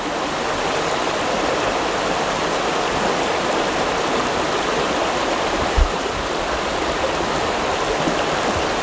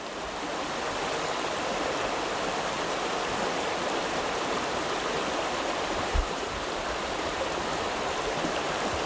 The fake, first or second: second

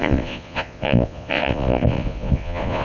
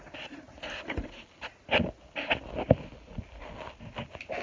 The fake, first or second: first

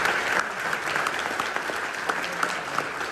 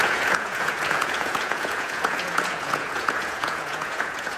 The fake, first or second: second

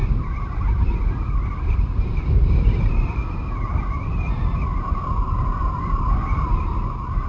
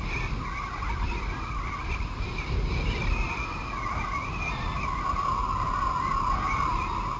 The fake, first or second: first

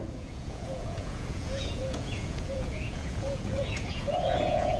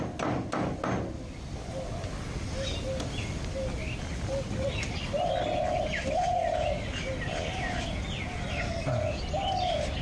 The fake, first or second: first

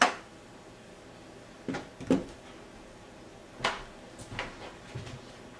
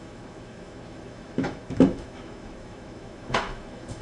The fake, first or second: second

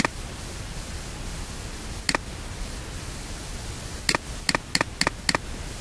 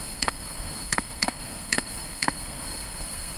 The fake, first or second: second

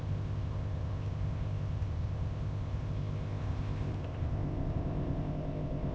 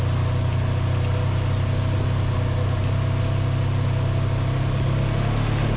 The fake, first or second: first